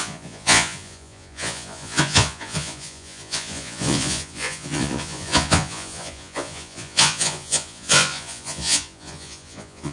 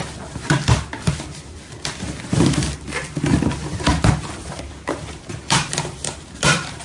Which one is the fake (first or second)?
first